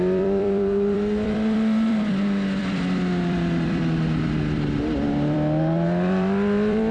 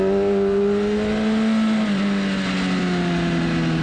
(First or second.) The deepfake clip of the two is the first